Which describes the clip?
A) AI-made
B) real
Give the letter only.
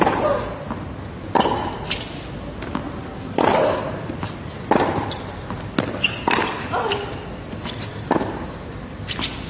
B